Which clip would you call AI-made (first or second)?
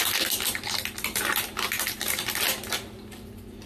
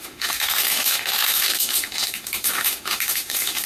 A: second